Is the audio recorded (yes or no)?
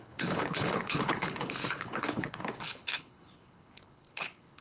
no